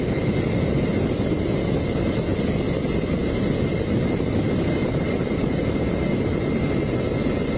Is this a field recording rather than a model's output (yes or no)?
yes